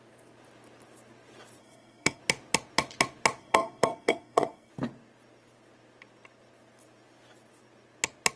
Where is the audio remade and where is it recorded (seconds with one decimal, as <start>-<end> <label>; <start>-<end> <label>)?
0.0-1.6 recorded; 1.6-2.2 remade; 2.2-3.4 recorded; 3.4-4.7 remade; 4.7-8.4 recorded